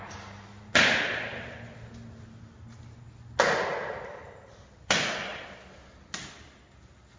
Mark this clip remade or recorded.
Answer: recorded